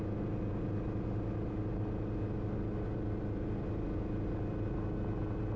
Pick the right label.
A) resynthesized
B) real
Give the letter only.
B